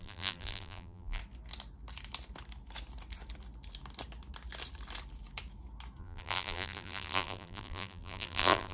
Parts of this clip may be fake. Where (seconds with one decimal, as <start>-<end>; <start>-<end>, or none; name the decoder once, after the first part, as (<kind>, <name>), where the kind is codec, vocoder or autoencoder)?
0.0-1.2 (vocoder, BigVGAN v2); 6.0-8.7